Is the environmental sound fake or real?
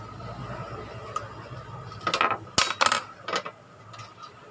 real